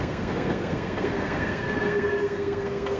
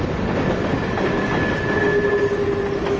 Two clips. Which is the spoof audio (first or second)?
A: first